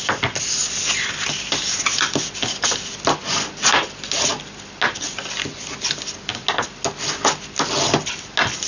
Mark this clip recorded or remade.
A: recorded